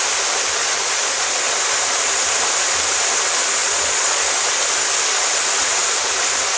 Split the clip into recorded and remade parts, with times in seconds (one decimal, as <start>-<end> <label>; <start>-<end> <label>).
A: 0.0-0.6 recorded; 0.6-1.4 remade; 1.4-3.6 recorded; 3.6-4.2 remade; 4.2-6.6 recorded